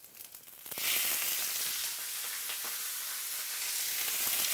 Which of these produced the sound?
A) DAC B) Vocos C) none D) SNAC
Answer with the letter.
C